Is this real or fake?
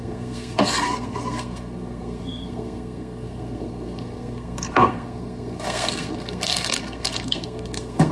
fake